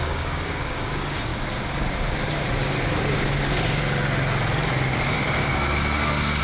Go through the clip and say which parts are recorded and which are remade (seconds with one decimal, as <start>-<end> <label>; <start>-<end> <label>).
0.0-1.3 remade; 1.3-5.1 recorded; 5.1-5.5 remade; 5.5-6.4 recorded